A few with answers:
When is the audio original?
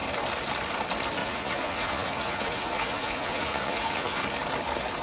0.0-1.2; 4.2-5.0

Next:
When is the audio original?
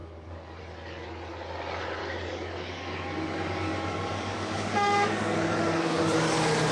0.6-2.0; 6.0-6.7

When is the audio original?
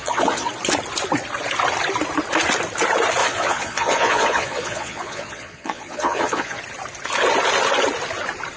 0.5-3.2; 6.6-8.6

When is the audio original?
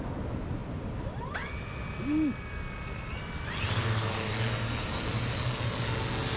0.0-6.4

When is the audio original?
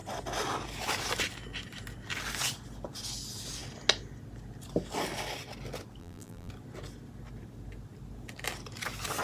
0.0-6.0; 6.5-9.2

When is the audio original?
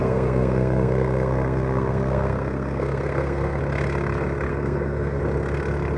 3.6-4.5; 5.2-6.0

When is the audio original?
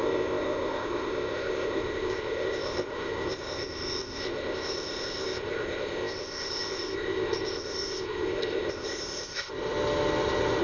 9.5-10.6